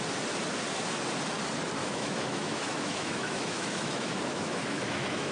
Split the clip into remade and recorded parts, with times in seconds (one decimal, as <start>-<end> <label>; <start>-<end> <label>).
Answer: 0.0-1.8 recorded; 1.8-5.3 remade